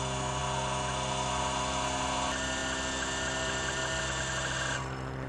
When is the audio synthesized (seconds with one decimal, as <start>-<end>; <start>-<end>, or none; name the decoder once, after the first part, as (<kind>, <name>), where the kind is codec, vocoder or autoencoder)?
none